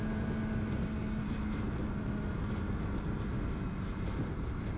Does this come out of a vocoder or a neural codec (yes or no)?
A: no